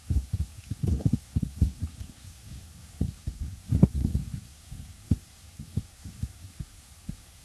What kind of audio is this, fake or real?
fake